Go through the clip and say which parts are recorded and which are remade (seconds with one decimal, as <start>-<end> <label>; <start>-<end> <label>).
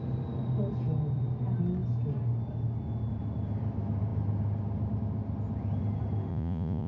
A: 0.0-6.3 recorded; 6.3-6.9 remade